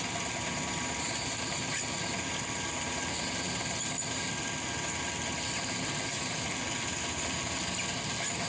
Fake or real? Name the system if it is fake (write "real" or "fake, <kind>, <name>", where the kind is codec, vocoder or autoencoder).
real